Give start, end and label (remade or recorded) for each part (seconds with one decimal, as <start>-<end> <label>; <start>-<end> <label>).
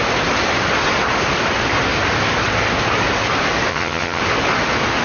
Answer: 0.0-3.7 recorded; 3.7-4.2 remade; 4.2-5.0 recorded